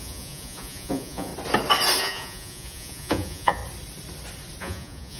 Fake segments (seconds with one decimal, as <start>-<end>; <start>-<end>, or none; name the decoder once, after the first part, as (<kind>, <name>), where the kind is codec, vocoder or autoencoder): 0.0-1.3 (vocoder, Vocos); 2.0-3.6; 4.6-5.2